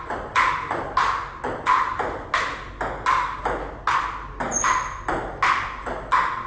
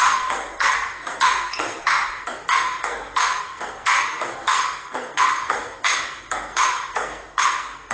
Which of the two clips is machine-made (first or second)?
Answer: second